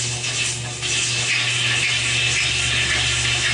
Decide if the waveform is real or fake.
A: real